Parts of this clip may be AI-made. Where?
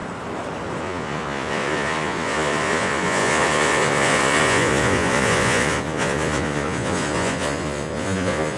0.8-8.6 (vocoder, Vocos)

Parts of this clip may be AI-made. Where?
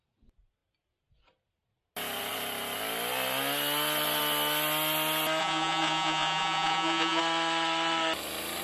5.4-7.2 (vocoder, Vocos)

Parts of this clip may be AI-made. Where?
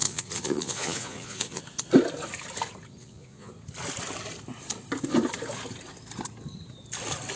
0.0-1.6 (vocoder, Vocos); 3.0-3.5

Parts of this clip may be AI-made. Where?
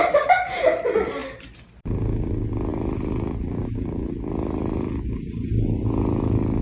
none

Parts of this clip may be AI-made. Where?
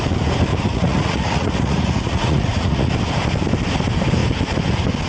0.5-2.9 (vocoder, Vocos)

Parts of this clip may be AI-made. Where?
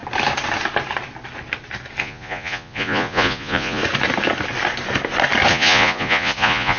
2.0-3.8 (vocoder, Vocos); 5.5-6.8